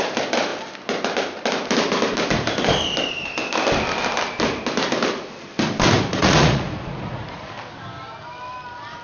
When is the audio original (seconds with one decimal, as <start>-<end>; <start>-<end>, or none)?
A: 0.0-6.1; 7.5-9.0